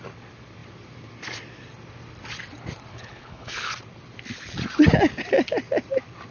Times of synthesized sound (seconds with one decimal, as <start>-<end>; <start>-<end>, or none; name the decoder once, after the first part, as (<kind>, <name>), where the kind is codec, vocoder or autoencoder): 2.9-3.7 (codec, HILCodec)